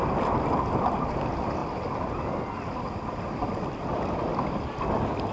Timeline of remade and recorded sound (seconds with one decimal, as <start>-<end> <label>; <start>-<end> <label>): 0.0-1.6 recorded; 1.6-4.5 remade; 4.5-5.3 recorded